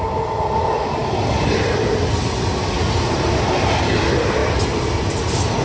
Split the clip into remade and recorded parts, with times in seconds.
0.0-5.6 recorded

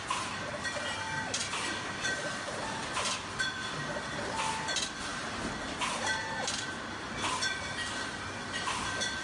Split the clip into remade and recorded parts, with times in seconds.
0.0-9.2 recorded

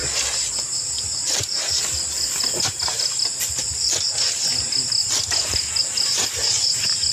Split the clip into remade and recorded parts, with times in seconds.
0.0-7.1 recorded

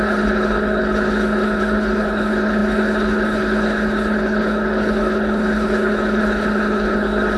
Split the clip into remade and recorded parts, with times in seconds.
0.0-7.4 remade

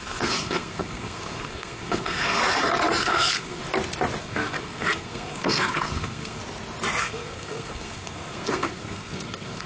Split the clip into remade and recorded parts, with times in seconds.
0.0-2.4 remade; 2.4-3.0 recorded; 3.0-3.6 remade; 3.6-4.2 recorded; 4.2-6.4 remade; 6.4-7.0 recorded; 7.0-9.7 remade

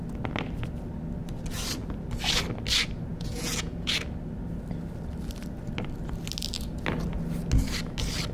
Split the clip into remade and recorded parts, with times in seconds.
0.0-3.1 recorded; 3.1-3.9 remade; 3.9-8.3 recorded

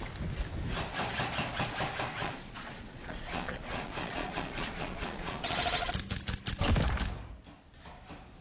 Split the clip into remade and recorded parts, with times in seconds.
0.0-2.2 recorded; 2.2-5.9 remade; 5.9-8.4 recorded

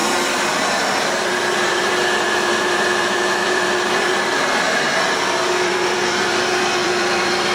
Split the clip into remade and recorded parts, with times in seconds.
0.0-1.2 recorded; 1.2-7.5 remade